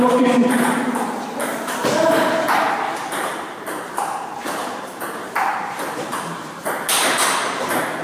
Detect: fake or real fake